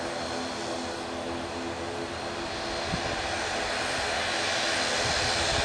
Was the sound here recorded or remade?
recorded